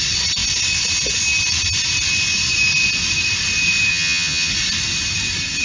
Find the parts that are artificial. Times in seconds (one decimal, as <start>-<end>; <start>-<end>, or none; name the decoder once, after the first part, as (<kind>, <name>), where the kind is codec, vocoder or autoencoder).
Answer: 3.9-4.5 (vocoder, HiFi-GAN)